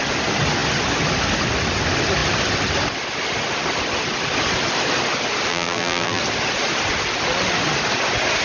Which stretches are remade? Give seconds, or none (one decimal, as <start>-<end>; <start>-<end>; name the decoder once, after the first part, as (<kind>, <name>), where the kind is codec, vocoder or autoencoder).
5.5-6.2 (vocoder, BigVGAN v2)